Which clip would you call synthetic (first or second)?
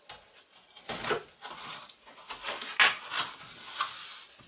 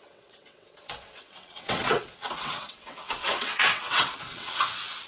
second